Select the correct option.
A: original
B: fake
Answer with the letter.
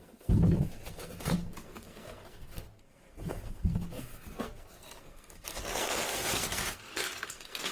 B